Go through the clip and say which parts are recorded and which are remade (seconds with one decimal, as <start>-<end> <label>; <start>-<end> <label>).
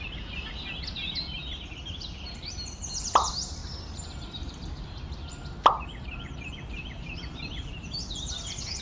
0.0-8.8 recorded